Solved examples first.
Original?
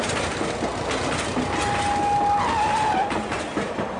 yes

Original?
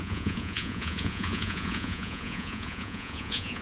no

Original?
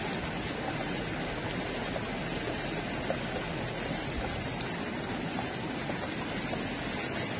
yes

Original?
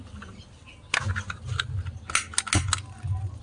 yes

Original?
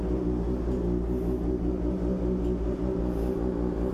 yes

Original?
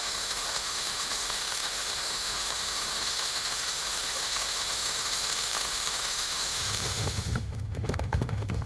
no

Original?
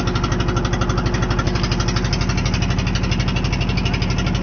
yes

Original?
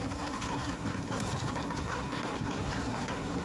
no